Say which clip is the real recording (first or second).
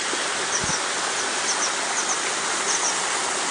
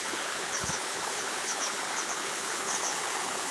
first